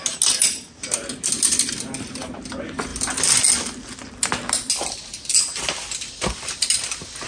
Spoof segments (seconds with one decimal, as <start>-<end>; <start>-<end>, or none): none